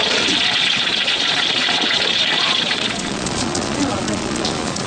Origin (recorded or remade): remade